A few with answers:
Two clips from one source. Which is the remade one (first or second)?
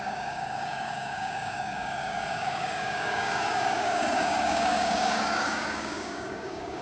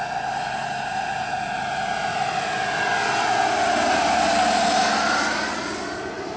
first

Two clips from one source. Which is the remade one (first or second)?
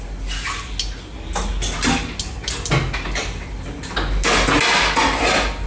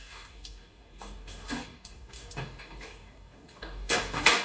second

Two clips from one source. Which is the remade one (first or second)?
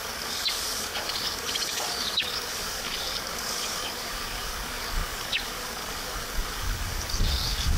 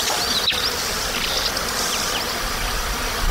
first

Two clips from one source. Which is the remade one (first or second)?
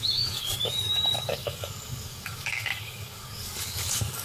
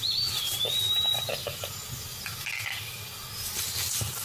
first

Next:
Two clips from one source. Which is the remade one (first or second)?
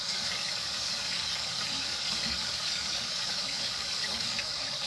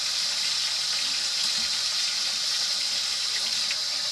first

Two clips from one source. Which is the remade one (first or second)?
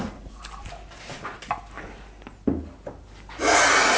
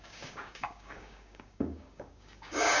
second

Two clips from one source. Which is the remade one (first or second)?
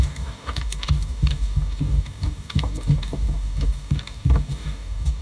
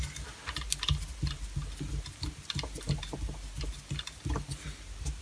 first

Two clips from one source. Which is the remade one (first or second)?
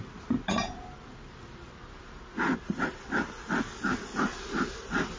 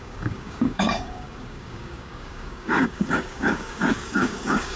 second